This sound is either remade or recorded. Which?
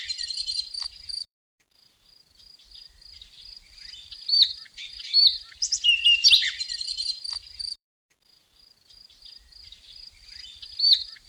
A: remade